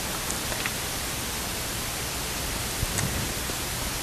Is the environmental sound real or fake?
real